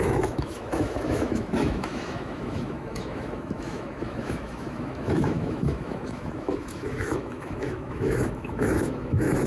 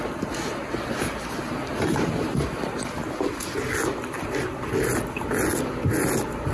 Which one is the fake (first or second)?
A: first